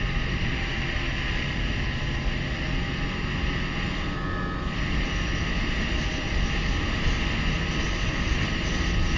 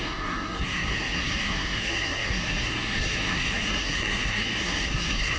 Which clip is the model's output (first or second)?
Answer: second